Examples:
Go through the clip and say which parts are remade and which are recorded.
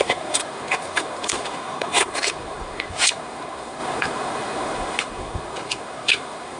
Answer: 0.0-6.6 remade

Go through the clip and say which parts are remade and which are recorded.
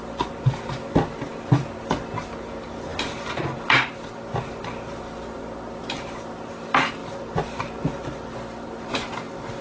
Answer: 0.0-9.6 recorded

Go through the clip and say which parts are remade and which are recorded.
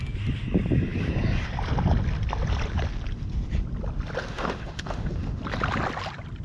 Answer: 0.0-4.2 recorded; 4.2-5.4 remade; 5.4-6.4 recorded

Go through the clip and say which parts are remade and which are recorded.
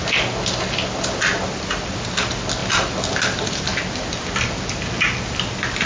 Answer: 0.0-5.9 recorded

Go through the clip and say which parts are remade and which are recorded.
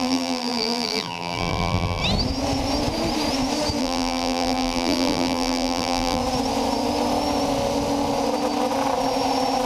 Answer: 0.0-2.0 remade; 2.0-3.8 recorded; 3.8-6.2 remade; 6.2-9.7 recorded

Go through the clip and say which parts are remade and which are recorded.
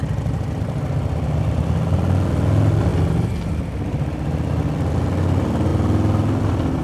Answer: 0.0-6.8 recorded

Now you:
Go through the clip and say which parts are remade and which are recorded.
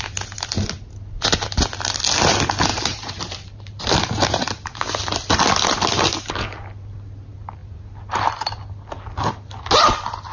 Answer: 0.0-2.7 recorded; 2.7-4.9 remade; 4.9-10.3 recorded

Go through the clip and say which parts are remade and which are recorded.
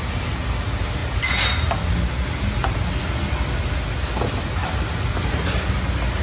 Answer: 0.0-6.2 recorded